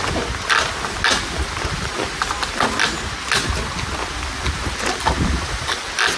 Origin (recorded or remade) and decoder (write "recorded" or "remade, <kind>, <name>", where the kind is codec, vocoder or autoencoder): recorded